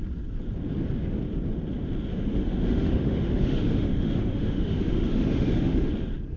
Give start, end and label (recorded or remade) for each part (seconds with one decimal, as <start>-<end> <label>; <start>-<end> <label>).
0.0-2.1 recorded; 2.1-5.9 remade; 5.9-6.4 recorded